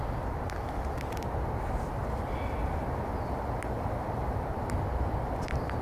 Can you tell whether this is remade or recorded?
recorded